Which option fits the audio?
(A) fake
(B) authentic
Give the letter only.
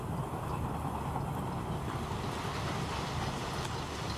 B